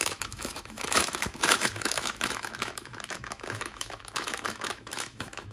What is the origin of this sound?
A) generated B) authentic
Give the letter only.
A